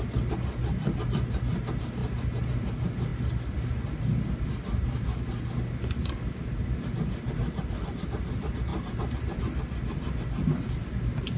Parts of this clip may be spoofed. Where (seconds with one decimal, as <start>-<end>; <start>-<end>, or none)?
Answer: none